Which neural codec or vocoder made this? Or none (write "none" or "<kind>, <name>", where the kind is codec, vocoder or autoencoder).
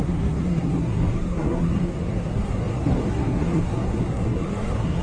codec, SNAC